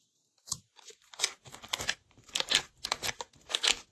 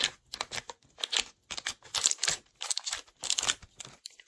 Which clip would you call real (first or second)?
second